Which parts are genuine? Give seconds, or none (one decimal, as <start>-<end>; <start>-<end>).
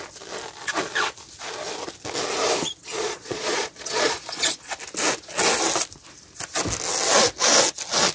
0.0-2.8; 4.7-8.1